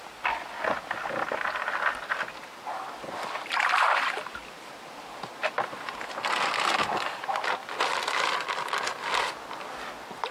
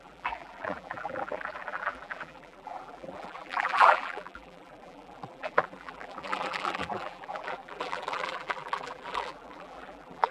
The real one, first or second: first